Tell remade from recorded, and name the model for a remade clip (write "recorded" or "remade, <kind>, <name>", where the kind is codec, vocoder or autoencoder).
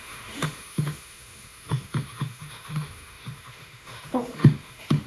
remade, autoencoder, DAC-VAE